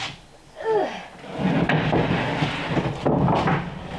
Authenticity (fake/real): real